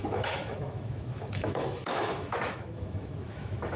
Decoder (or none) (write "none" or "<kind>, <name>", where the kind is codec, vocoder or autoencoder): autoencoder, DAC-VAE